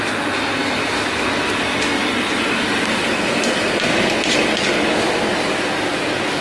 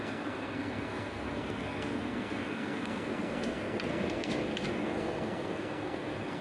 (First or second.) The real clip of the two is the first